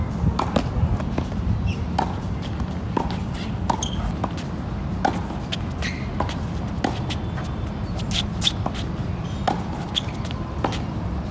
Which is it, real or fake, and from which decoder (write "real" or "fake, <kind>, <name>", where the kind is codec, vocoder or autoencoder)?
real